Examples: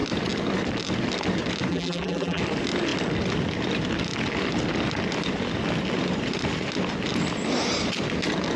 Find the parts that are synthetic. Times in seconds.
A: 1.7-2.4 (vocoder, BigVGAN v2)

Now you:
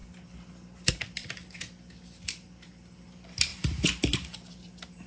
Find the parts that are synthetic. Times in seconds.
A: 3.5-4.5 (vocoder, BigVGAN v2)

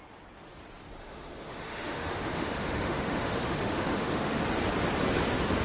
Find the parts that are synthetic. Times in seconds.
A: 1.0-4.4 (autoencoder, DAC-VAE)

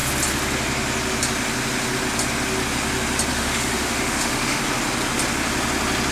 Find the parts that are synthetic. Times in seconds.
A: 3.3-4.6 (autoencoder, DAC-VAE)

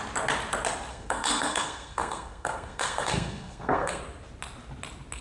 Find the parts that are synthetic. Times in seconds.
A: 0.9-4.0 (codec, SNAC)

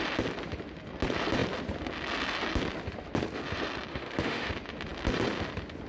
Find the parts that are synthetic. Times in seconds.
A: 3.9-4.5 (autoencoder, DAC-VAE)

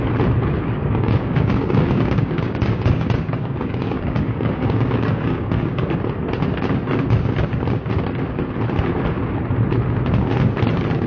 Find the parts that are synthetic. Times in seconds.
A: 0.8-6.0 (codec, DAC)